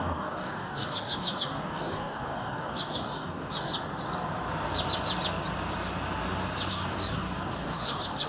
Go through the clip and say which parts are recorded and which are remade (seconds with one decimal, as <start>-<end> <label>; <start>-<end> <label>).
0.0-3.7 remade; 3.7-6.7 recorded; 6.7-8.3 remade